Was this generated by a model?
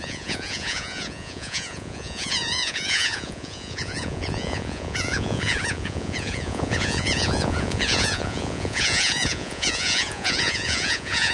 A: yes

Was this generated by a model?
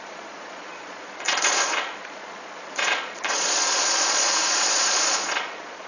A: yes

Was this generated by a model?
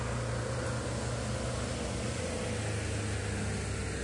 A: no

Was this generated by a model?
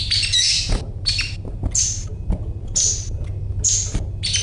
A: no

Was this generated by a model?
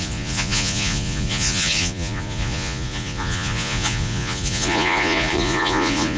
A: yes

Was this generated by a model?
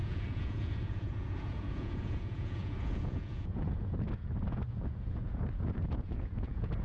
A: yes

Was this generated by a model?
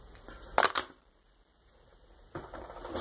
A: no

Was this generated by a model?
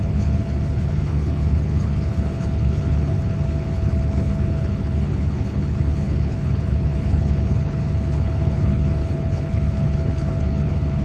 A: yes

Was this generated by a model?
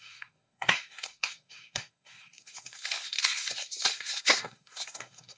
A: yes